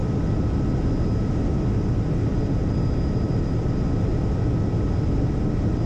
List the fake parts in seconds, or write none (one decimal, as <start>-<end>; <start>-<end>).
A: none